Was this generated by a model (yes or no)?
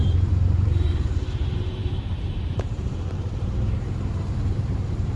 yes